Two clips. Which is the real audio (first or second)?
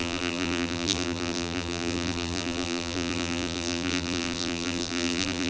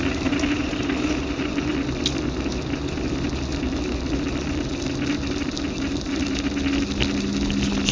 second